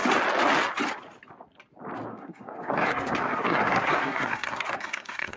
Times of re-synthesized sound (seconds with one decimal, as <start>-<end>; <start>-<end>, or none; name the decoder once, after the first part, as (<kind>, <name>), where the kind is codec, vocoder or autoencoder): 2.1-5.4 (codec, SNAC)